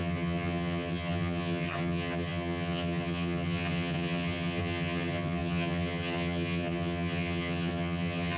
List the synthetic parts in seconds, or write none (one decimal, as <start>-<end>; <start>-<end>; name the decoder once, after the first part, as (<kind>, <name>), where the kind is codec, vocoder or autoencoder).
0.0-8.4 (vocoder, HiFi-GAN)